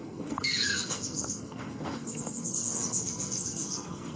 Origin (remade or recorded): remade